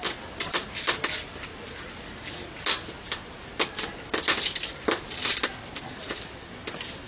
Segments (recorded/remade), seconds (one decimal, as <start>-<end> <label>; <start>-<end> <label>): 0.0-7.1 recorded